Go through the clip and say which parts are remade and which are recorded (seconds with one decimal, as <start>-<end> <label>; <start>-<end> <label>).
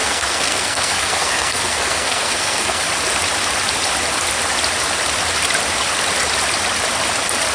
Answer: 0.0-2.8 remade; 2.8-7.5 recorded